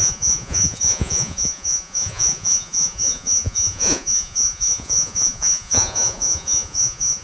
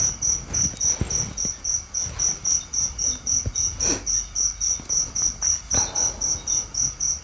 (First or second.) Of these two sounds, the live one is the second